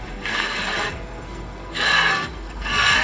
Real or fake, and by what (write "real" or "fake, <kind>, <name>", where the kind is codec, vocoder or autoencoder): fake, codec, SNAC